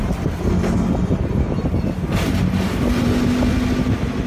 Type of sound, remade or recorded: recorded